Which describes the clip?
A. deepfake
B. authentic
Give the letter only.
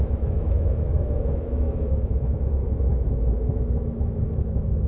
A